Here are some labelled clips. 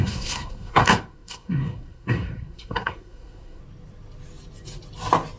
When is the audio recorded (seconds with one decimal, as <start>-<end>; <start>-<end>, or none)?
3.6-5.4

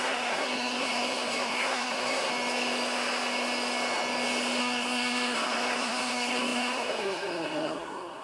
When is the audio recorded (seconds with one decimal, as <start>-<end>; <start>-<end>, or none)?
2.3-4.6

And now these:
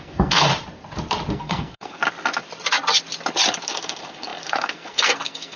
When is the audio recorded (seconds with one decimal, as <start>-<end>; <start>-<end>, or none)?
0.5-1.3; 2.0-3.6

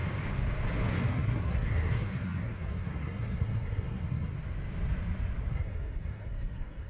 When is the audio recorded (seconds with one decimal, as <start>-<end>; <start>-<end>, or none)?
0.0-1.1; 4.3-5.5

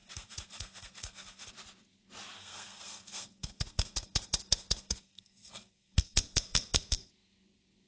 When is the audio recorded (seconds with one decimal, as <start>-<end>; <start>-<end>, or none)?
1.5-2.4; 7.1-7.9

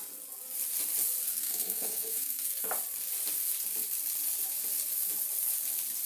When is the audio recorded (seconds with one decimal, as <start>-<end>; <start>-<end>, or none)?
0.0-1.2; 2.7-6.1